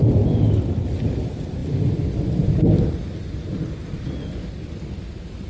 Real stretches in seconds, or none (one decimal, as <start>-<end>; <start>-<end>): 0.0-5.5